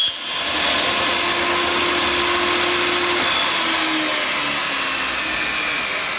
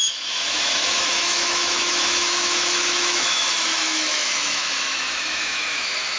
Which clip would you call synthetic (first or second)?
second